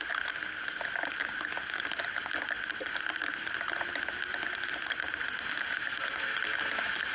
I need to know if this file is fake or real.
real